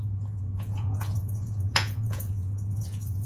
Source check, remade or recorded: remade